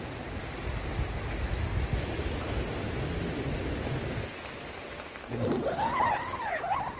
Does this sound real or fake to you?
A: real